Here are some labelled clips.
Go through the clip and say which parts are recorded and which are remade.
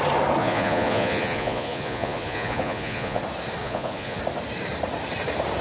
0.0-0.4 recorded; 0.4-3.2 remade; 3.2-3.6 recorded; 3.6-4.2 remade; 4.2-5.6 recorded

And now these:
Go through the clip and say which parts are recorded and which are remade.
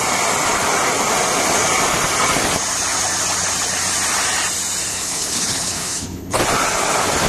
0.0-4.9 recorded; 4.9-6.4 remade; 6.4-7.3 recorded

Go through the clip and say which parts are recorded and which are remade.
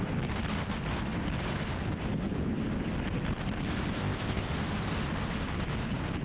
0.0-4.0 recorded; 4.0-4.5 remade; 4.5-6.2 recorded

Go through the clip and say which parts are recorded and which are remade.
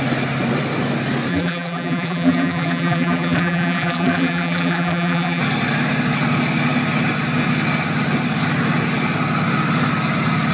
0.0-1.3 recorded; 1.3-5.4 remade; 5.4-10.5 recorded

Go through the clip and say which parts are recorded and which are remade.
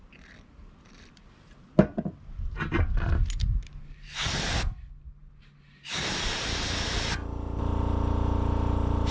0.0-9.1 recorded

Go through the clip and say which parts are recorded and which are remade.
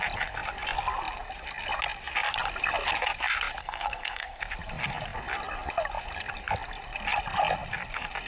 0.0-3.6 recorded; 3.6-4.4 remade; 4.4-8.3 recorded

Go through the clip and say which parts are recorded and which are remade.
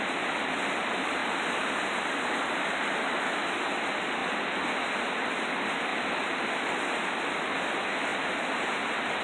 0.0-1.2 recorded; 1.2-1.8 remade; 1.8-5.9 recorded; 5.9-6.5 remade; 6.5-9.2 recorded